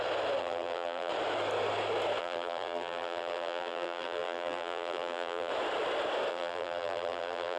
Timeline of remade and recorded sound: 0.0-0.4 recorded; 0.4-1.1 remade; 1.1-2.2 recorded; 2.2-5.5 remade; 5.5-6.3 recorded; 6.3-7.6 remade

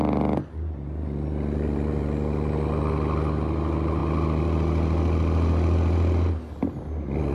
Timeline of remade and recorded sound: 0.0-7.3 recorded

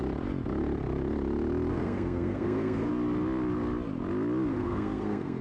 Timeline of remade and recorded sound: 0.0-1.7 recorded; 1.7-2.9 remade; 2.9-4.5 recorded; 4.5-5.4 remade

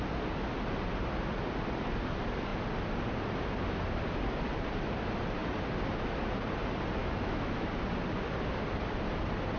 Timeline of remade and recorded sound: 0.0-7.0 recorded; 7.0-7.7 remade; 7.7-9.6 recorded